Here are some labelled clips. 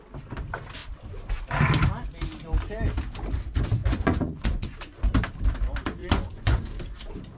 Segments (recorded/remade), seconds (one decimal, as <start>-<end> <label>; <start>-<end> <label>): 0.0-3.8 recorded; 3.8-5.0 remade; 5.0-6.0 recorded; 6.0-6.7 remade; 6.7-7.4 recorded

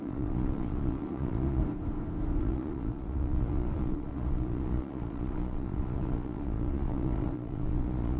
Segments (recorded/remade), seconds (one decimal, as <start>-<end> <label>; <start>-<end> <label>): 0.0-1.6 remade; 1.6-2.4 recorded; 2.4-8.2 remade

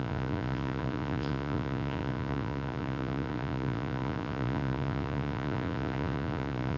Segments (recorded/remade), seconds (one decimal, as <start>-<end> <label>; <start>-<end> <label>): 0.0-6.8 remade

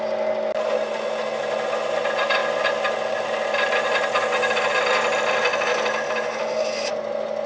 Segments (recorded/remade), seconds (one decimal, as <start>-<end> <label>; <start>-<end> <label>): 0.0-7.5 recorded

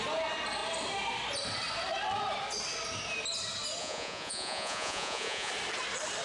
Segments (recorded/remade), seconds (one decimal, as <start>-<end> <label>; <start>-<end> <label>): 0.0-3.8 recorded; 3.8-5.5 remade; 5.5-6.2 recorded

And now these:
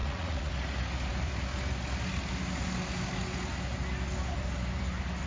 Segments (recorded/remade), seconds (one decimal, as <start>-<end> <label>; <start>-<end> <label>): 0.0-0.5 remade; 0.5-5.3 recorded

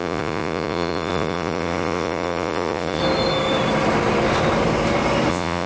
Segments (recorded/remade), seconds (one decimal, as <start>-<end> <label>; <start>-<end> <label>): 0.0-3.0 remade; 3.0-5.3 recorded; 5.3-5.7 remade

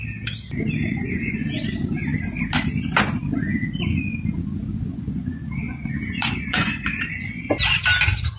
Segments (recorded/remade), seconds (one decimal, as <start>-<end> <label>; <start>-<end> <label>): 0.0-0.9 recorded; 0.9-1.4 remade; 1.4-4.9 recorded; 4.9-7.5 remade; 7.5-8.4 recorded